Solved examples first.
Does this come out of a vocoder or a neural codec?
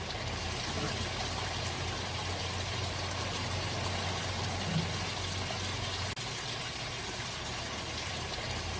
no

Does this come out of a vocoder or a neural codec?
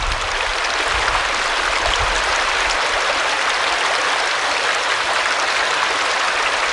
no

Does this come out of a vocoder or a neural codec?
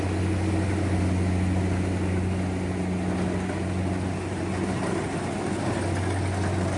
no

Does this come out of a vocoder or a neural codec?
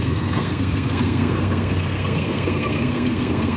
yes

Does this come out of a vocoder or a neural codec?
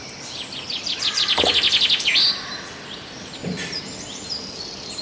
no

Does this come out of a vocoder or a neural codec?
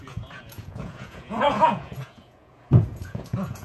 yes